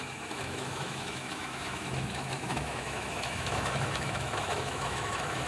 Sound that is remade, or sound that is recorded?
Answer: remade